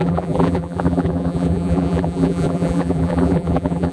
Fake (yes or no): yes